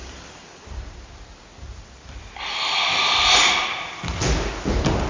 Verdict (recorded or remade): recorded